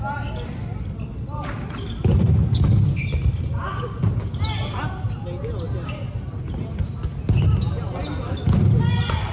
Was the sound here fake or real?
real